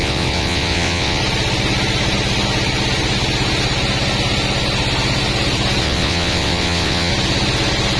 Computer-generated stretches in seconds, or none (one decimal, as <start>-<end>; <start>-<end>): 0.0-1.2; 5.8-7.1

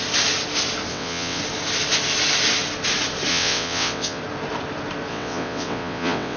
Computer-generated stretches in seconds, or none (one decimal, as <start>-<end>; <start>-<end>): 0.9-1.4; 3.3-4.2; 5.1-6.4